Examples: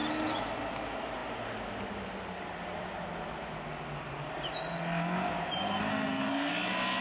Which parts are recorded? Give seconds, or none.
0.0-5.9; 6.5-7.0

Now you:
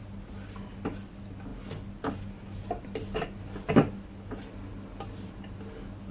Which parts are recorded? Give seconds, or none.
0.0-6.1

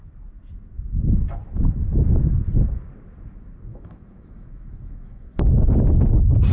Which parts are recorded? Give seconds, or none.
0.0-1.9; 2.5-3.7; 5.6-6.5